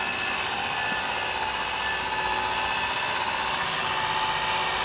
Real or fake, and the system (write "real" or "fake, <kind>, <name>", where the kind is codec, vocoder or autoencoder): real